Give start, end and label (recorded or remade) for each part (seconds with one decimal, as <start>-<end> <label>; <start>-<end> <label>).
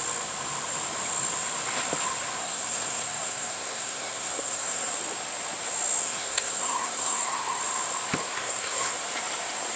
0.0-2.4 recorded; 2.4-4.9 remade; 4.9-6.0 recorded; 6.0-7.6 remade; 7.6-8.2 recorded; 8.2-8.9 remade; 8.9-9.8 recorded